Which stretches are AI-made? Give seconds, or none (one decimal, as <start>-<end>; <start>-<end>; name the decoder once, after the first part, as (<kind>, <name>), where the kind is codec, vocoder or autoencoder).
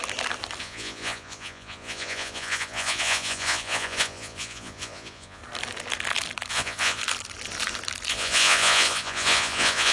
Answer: 0.6-5.4 (vocoder, Vocos); 6.5-7.0; 8.1-9.9